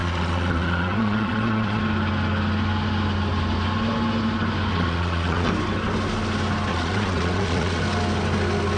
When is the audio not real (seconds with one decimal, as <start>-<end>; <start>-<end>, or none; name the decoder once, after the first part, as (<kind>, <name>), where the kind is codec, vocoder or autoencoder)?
0.0-1.8 (vocoder, Vocos); 4.7-5.5; 6.7-7.8